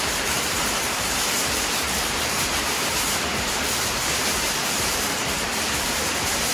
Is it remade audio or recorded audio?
remade